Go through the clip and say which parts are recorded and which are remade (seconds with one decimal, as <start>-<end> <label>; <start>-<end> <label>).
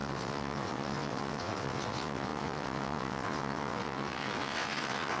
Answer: 0.0-5.2 remade